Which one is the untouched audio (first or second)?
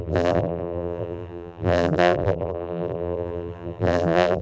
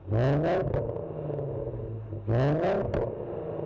second